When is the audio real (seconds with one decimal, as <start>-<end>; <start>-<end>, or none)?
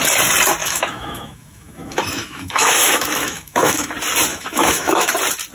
0.0-0.6; 3.9-4.3; 5.1-5.5